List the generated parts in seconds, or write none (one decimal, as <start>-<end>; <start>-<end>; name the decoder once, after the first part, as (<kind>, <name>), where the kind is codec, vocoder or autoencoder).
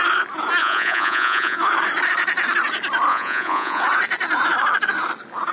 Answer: 0.6-1.6 (vocoder, Vocos); 3.1-3.8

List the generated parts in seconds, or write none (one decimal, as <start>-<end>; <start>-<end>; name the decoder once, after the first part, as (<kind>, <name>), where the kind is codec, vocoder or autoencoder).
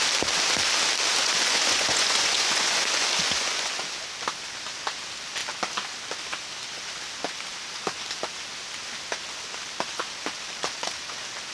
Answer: 1.2-3.8 (vocoder, Vocos)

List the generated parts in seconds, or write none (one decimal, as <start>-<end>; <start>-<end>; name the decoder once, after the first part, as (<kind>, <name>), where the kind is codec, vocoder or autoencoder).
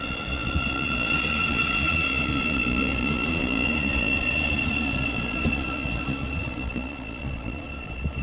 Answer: 0.0-8.2 (vocoder, Vocos)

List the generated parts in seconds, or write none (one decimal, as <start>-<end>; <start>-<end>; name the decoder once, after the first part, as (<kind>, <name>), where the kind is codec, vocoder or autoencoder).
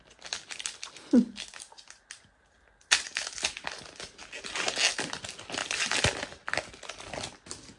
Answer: none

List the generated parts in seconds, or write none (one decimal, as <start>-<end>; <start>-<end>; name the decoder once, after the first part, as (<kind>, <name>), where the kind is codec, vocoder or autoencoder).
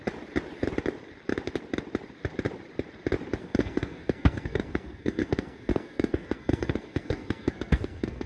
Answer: 3.4-8.3 (codec, SNAC)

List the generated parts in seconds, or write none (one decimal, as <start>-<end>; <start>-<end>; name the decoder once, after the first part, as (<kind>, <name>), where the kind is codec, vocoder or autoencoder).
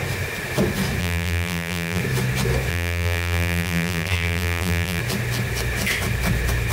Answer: 1.0-2.0 (vocoder, BigVGAN v2); 2.7-5.0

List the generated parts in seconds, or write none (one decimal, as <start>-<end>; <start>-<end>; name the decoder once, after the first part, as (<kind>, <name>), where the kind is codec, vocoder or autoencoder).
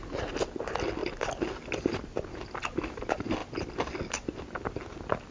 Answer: none